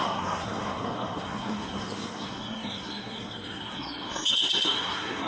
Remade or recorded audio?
remade